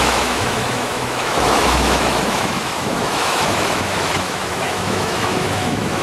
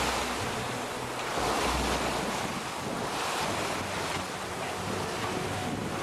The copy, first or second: first